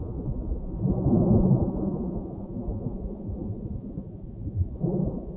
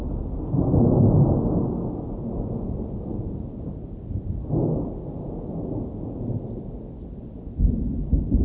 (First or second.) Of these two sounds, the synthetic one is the first